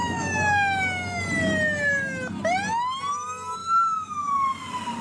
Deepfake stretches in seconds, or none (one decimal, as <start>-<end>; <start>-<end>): 0.0-1.2; 3.6-4.3